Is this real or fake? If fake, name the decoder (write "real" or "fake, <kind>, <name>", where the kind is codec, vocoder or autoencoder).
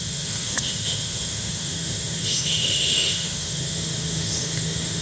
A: fake, autoencoder, DAC-VAE